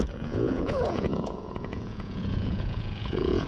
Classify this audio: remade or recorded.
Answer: remade